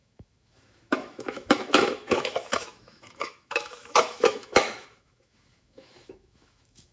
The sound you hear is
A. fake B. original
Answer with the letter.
A